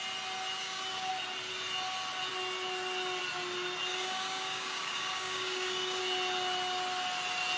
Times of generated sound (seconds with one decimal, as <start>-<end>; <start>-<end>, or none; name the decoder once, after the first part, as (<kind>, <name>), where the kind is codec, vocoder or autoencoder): 0.6-1.1 (codec, DAC); 3.9-6.0